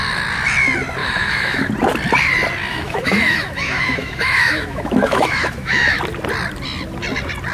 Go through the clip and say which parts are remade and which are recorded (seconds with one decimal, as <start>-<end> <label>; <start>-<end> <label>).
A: 0.0-1.0 recorded; 1.0-1.7 remade; 1.7-2.7 recorded; 2.7-6.0 remade; 6.0-7.5 recorded

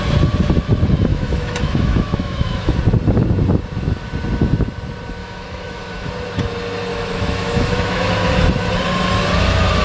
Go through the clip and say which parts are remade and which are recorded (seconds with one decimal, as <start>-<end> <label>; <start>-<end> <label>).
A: 0.0-1.1 recorded; 1.1-2.8 remade; 2.8-5.2 recorded; 5.2-6.1 remade; 6.1-6.9 recorded; 6.9-8.1 remade; 8.1-9.8 recorded